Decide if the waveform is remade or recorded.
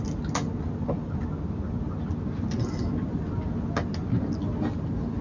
recorded